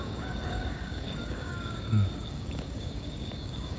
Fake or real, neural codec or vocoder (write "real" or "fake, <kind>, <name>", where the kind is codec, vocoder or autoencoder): fake, codec, DAC